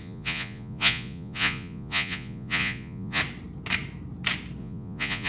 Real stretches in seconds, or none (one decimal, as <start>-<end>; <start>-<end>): 3.2-4.6